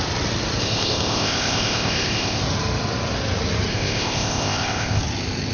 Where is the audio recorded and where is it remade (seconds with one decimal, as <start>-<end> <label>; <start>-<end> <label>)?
0.0-0.6 recorded; 0.6-2.4 remade; 2.4-3.7 recorded; 3.7-5.0 remade; 5.0-5.5 recorded